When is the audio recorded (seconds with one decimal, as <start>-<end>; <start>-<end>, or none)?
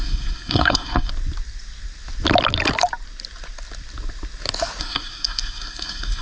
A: 1.1-4.8